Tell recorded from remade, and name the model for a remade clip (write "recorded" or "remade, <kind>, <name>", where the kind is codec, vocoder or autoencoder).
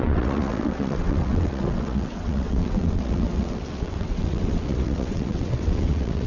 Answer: remade, vocoder, WaveNeXt